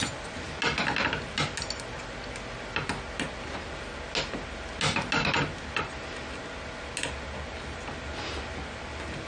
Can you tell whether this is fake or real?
real